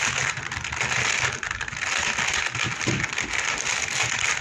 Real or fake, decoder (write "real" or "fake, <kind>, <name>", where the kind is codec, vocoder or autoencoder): real